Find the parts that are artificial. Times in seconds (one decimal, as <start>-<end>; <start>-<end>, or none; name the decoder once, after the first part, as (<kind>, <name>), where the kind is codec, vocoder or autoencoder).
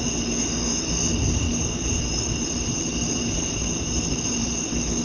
1.5-4.5 (vocoder, BigVGAN v2)